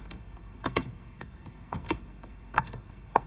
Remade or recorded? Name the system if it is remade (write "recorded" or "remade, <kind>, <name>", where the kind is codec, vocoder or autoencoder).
remade, codec, SNAC